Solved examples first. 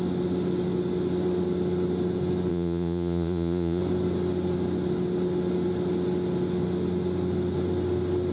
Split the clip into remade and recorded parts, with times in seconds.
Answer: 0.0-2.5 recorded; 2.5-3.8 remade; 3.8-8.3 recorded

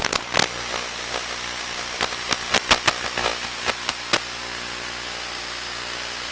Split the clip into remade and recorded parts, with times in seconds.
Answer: 0.0-6.3 recorded

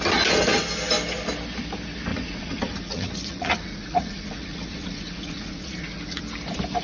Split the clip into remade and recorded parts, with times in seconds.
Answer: 0.0-2.1 recorded; 2.1-6.2 remade; 6.2-6.8 recorded

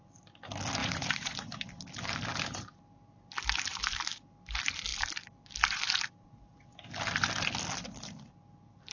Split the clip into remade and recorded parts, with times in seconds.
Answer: 0.0-0.8 recorded; 0.8-1.5 remade; 1.5-8.9 recorded

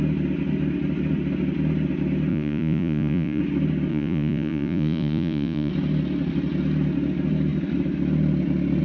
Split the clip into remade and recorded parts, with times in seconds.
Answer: 0.0-2.3 recorded; 2.3-3.4 remade; 3.4-3.9 recorded; 3.9-5.7 remade; 5.7-8.8 recorded

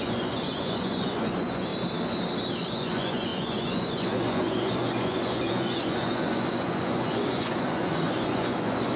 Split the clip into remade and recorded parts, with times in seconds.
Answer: 0.0-1.7 remade; 1.7-2.7 recorded; 2.7-9.0 remade

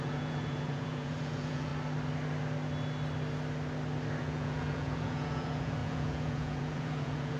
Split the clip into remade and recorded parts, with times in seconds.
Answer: 0.0-1.7 remade; 1.7-4.2 recorded; 4.2-7.4 remade

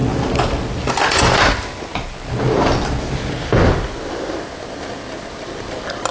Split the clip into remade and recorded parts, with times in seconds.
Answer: 0.0-6.1 recorded